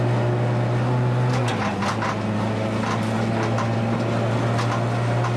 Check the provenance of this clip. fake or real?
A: real